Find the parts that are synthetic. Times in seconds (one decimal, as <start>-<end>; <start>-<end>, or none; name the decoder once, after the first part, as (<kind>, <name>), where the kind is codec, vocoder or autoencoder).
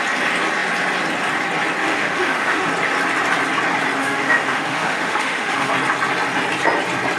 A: 1.8-2.7 (autoencoder, DAC-VAE); 4.0-5.7